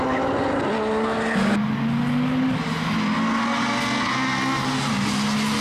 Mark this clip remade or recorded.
recorded